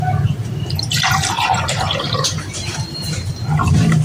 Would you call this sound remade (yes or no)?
yes